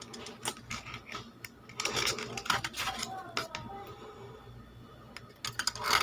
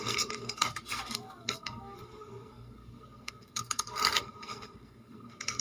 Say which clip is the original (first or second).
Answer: first